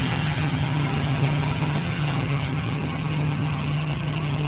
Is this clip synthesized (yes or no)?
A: yes